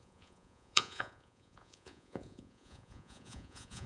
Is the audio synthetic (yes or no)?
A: yes